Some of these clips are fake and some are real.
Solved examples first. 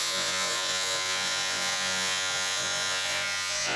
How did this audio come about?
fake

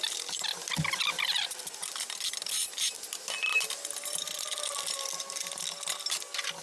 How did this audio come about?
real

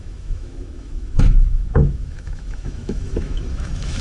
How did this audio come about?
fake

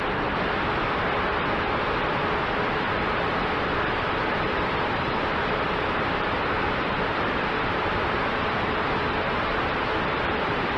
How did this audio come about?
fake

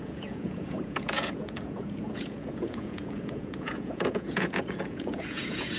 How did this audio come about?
fake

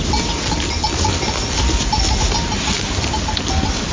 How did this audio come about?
real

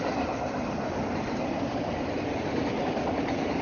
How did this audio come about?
real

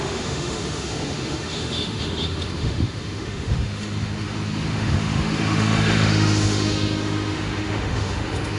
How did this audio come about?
fake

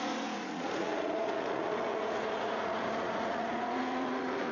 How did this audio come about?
fake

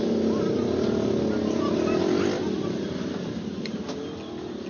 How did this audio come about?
real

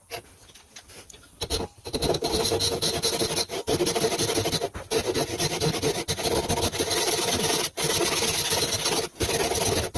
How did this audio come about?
real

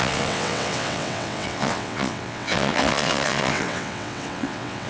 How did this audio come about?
fake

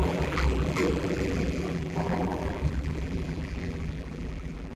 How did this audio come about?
fake